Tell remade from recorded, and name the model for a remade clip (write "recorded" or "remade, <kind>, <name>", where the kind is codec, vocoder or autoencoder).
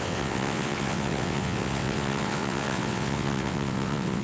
remade, vocoder, WaveNeXt